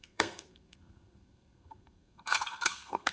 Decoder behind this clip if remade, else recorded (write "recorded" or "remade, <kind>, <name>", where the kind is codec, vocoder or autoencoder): remade, codec, SNAC